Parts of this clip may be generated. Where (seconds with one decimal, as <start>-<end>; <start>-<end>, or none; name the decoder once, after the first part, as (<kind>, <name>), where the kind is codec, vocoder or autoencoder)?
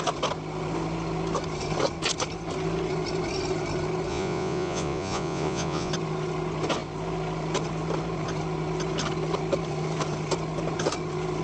4.1-5.9 (vocoder, Vocos)